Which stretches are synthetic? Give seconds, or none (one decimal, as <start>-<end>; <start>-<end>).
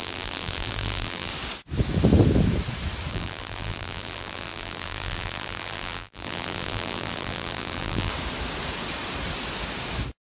0.0-1.3; 3.1-8.1